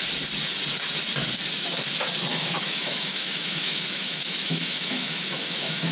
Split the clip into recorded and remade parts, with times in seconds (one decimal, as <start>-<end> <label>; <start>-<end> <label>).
0.0-2.3 recorded; 2.3-5.9 remade